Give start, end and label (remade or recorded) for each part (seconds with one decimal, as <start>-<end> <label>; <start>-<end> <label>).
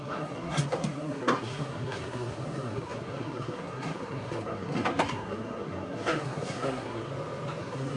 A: 0.0-7.1 remade; 7.1-7.6 recorded; 7.6-8.0 remade